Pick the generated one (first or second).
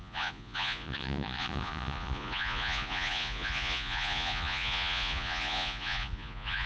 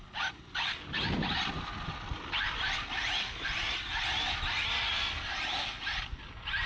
first